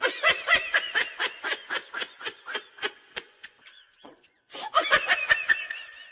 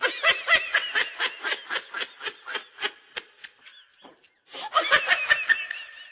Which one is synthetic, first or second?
first